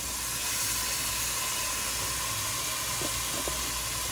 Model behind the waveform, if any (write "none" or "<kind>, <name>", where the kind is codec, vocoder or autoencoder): none